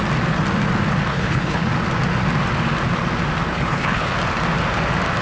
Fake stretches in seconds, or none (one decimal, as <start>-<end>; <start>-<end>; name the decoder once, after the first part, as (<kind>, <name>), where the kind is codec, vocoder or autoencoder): 1.1-1.7 (codec, HILCodec); 3.5-4.1